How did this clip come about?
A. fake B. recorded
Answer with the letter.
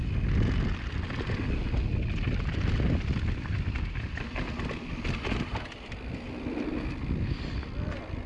B